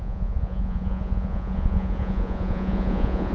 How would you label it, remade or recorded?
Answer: remade